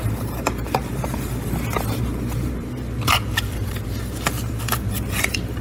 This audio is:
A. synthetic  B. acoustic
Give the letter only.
A